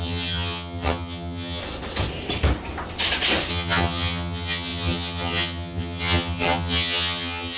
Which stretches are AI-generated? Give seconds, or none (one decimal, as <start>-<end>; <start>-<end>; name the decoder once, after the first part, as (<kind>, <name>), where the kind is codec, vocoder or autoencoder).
0.0-1.6 (vocoder, HiFi-GAN); 3.5-7.6